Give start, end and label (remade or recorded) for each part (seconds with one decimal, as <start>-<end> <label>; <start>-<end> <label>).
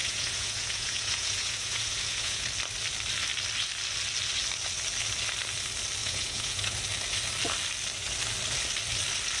0.0-2.4 remade; 2.4-6.0 recorded; 6.0-6.7 remade; 6.7-9.4 recorded